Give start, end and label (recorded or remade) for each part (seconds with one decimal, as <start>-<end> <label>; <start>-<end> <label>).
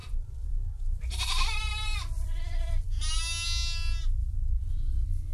0.0-2.7 remade; 2.7-5.3 recorded